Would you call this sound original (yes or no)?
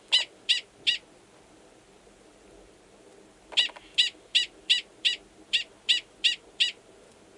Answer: yes